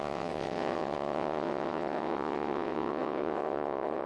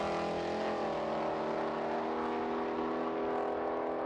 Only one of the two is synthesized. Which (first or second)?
first